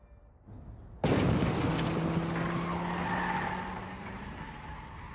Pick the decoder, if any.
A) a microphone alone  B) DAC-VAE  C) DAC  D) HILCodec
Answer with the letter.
A